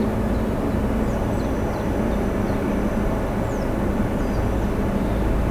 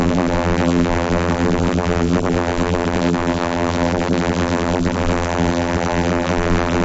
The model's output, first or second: second